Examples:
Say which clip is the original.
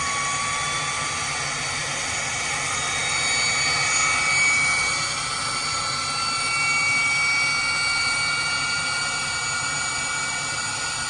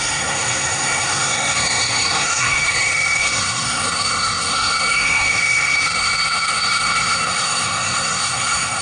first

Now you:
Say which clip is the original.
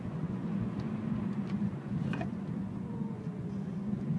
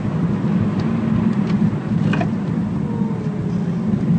second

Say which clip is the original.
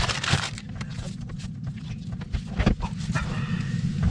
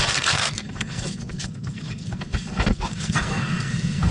first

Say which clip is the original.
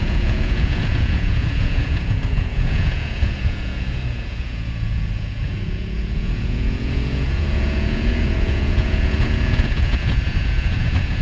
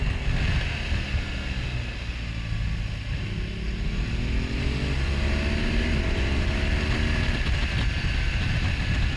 second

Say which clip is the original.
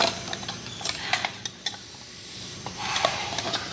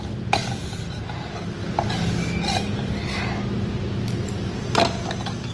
second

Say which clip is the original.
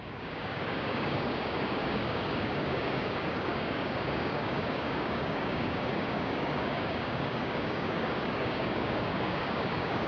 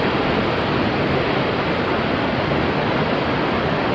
second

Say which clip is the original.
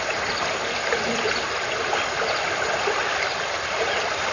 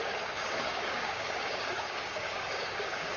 first